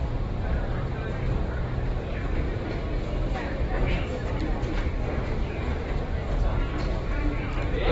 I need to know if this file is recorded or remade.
remade